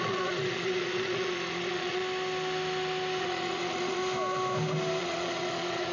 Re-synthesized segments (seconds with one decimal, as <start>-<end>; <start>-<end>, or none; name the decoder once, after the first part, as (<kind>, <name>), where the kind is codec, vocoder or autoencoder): 0.0-2.0 (vocoder, Vocos); 3.2-4.0; 5.0-5.9